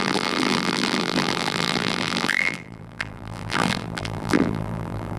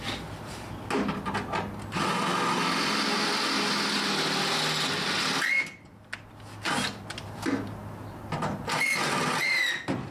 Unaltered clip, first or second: second